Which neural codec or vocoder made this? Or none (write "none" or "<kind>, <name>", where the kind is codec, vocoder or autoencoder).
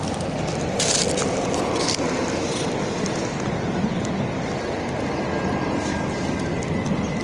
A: none